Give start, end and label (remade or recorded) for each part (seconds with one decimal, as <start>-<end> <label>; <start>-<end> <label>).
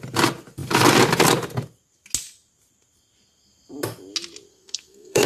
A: 0.0-4.5 recorded; 4.5-5.3 remade